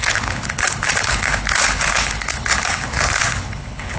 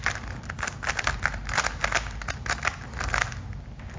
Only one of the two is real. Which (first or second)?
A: second